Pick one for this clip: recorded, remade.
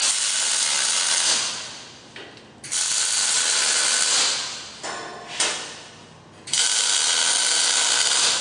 recorded